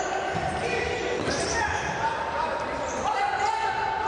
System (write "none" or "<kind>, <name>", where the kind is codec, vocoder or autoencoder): none